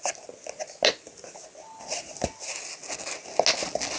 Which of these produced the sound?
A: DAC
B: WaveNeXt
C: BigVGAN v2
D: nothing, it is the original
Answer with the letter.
D